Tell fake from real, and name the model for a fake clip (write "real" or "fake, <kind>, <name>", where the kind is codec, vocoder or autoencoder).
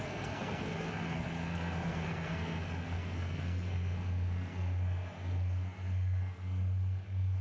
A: fake, codec, SNAC